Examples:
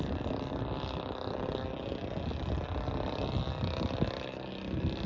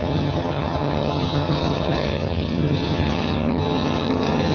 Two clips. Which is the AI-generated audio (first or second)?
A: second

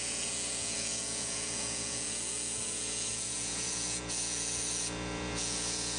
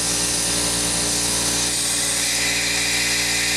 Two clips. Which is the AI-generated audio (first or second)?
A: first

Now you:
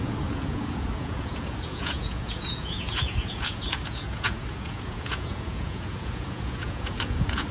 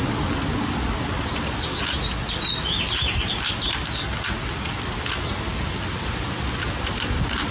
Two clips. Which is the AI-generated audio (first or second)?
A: first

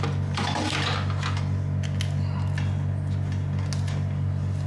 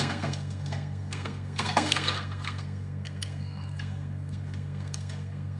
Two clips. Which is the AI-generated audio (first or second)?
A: second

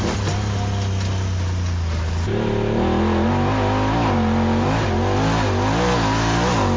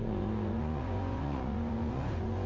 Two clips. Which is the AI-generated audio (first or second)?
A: second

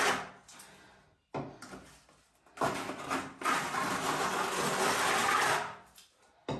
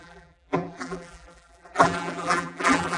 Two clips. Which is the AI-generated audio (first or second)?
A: second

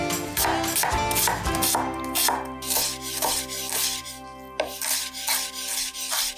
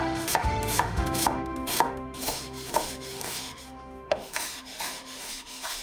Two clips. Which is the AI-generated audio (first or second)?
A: second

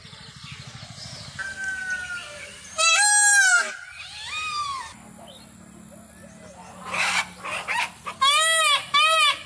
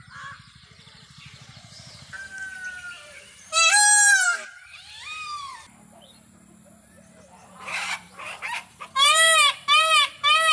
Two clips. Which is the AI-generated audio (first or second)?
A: second